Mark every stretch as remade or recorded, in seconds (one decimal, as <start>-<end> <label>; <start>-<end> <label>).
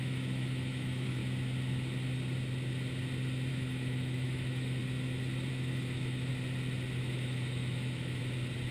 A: 0.0-1.2 remade; 1.2-3.5 recorded; 3.5-4.8 remade; 4.8-5.5 recorded; 5.5-6.3 remade; 6.3-7.0 recorded; 7.0-8.2 remade; 8.2-8.7 recorded